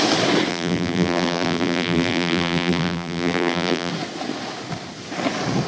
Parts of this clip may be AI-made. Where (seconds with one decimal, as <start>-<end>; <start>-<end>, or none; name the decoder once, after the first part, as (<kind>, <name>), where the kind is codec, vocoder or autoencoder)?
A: 0.5-3.9 (vocoder, BigVGAN v2)